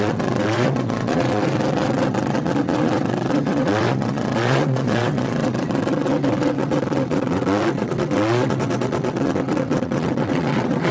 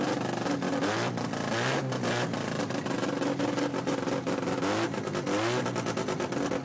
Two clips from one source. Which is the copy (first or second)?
first